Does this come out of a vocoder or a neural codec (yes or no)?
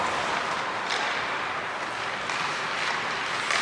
no